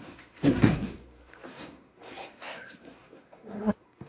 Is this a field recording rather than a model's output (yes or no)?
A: no